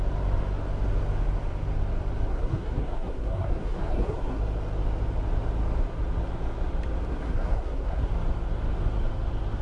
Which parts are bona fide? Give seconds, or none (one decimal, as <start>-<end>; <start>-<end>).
0.0-2.3; 4.4-7.1; 8.1-9.6